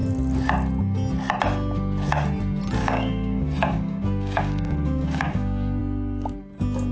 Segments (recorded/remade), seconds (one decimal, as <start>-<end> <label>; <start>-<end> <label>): 0.0-2.8 recorded; 2.8-5.8 remade; 5.8-6.9 recorded